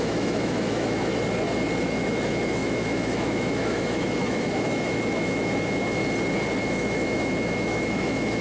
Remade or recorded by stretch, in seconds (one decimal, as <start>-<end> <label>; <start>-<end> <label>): 0.0-1.1 remade; 1.1-1.8 recorded; 1.8-6.0 remade; 6.0-6.6 recorded; 6.6-8.4 remade